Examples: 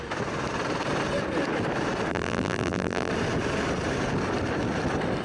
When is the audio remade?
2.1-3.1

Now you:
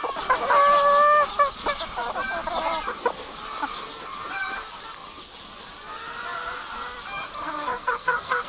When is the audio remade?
7.4-8.5

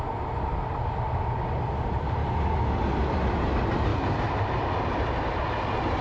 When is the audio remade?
none

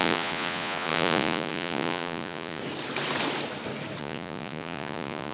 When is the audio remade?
0.0-2.6; 4.0-5.3

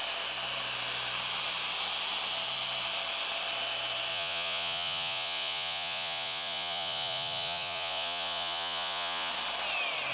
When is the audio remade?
4.1-9.3

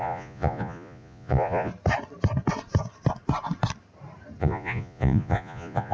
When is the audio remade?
0.0-1.7; 4.4-5.9